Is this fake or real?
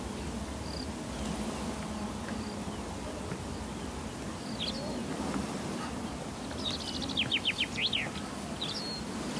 real